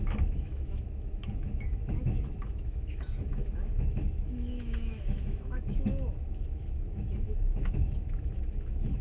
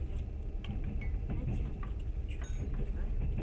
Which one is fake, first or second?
first